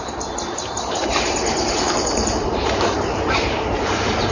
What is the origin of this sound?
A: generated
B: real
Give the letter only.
A